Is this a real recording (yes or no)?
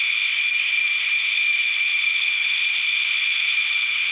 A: no